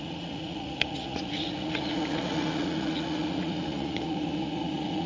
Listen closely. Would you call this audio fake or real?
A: fake